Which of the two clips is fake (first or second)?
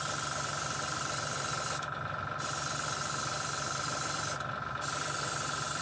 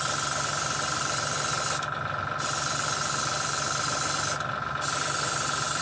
first